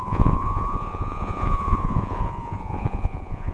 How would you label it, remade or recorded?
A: remade